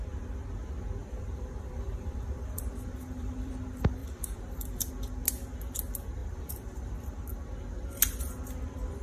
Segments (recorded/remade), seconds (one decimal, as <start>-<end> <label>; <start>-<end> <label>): 0.0-1.0 recorded; 1.0-3.5 remade; 3.5-4.0 recorded; 4.0-4.9 remade; 4.9-6.2 recorded; 6.2-6.9 remade; 6.9-9.0 recorded